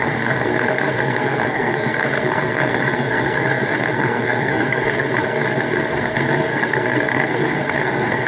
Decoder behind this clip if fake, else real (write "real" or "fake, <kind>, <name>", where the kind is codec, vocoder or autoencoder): fake, codec, SNAC